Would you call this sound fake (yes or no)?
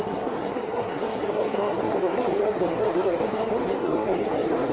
yes